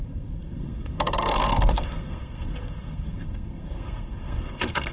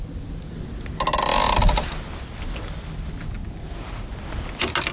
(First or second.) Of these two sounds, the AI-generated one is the first